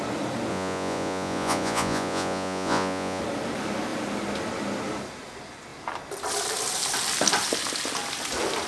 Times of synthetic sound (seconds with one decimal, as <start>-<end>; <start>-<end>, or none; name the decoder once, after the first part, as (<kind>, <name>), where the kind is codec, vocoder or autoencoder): 0.5-3.2 (vocoder, Vocos)